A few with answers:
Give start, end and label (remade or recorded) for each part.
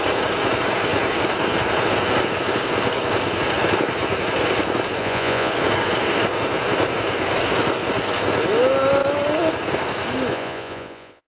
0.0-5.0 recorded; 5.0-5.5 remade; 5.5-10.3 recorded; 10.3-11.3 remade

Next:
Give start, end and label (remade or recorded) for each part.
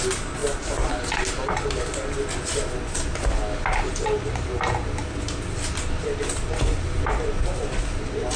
0.0-8.4 recorded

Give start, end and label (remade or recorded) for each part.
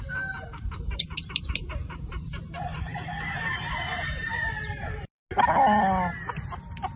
0.0-5.2 remade; 5.2-6.5 recorded; 6.5-7.0 remade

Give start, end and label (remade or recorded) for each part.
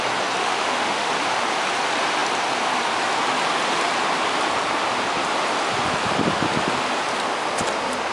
0.0-0.4 recorded; 0.4-1.1 remade; 1.1-8.1 recorded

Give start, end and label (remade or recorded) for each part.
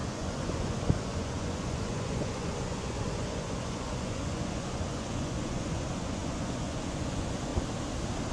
0.0-7.5 remade; 7.5-8.3 recorded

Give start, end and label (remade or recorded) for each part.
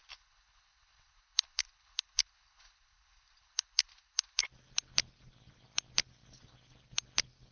0.0-4.5 remade; 4.5-7.5 recorded